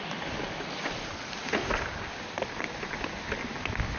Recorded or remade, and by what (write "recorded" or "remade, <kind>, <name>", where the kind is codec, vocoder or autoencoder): recorded